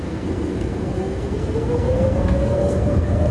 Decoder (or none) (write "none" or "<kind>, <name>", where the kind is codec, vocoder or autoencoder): codec, SNAC